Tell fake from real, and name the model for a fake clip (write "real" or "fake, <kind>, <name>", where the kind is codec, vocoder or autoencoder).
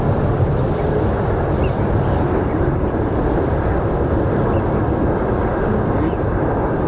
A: real